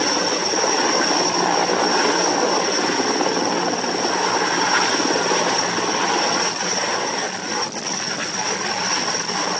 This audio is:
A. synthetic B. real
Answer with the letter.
B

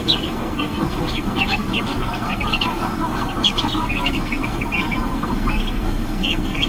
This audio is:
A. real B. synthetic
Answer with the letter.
B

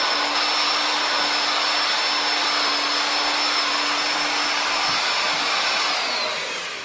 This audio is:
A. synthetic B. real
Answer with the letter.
B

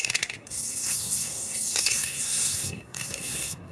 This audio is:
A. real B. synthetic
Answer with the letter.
B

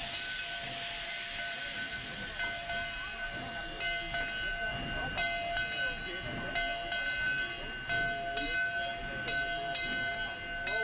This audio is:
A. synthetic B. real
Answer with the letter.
B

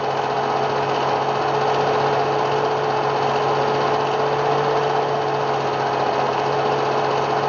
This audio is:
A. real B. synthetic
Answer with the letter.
A